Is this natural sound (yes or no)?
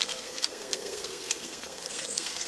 no